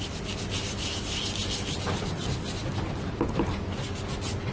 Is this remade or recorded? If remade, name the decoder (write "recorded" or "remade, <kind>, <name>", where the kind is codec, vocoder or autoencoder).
recorded